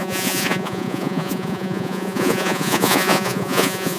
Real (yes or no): no